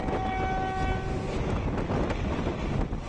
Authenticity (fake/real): real